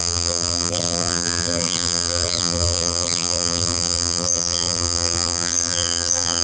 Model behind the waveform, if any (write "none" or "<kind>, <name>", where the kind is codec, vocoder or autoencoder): vocoder, BigVGAN v2